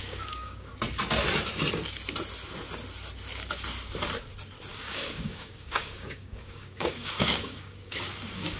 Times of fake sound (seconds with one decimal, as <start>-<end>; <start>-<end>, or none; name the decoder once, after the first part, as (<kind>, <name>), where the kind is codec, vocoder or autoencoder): 0.0-0.7 (codec, DAC); 4.7-8.6